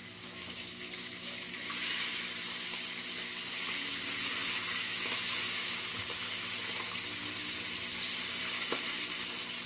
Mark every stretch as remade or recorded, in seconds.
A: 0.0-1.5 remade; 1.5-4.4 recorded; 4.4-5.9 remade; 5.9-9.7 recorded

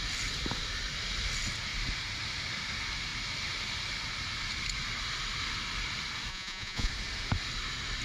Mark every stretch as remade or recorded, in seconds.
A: 0.0-6.3 recorded; 6.3-6.9 remade; 6.9-8.0 recorded